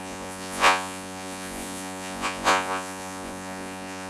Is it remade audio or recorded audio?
remade